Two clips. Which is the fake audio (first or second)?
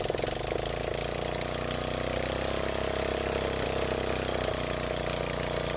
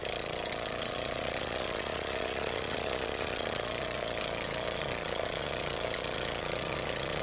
second